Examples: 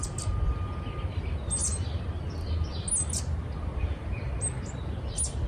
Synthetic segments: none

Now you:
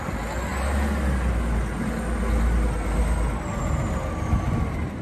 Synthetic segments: none

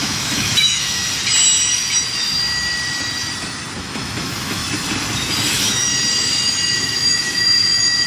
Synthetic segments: 0.0-1.0 (autoencoder, DAC-VAE); 3.8-4.6; 5.5-5.9; 6.8-8.1

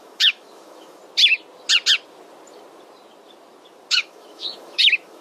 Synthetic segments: 0.0-1.0 (autoencoder, DAC-VAE); 3.9-5.2